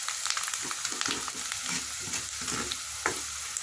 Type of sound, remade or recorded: recorded